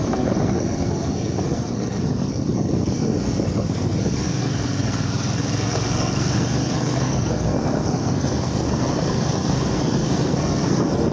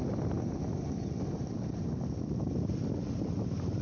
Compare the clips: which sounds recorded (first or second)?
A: second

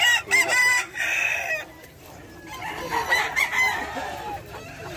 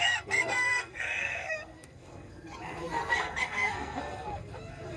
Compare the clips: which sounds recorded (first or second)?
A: first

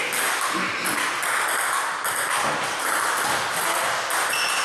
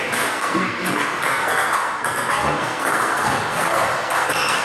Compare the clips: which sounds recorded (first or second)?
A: first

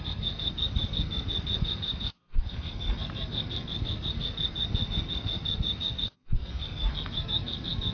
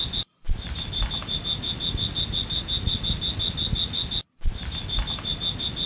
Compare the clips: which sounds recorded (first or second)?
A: second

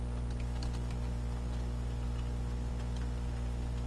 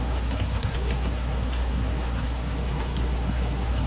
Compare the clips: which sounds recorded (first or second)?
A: first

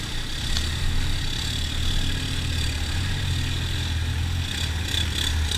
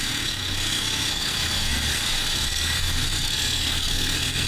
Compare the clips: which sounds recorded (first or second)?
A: first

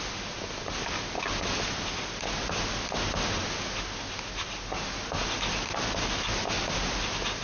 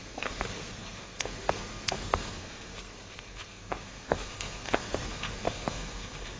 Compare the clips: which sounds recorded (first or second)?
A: first